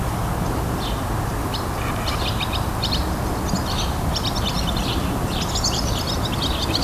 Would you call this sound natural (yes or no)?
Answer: yes